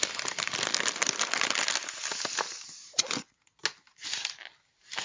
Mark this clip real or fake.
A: real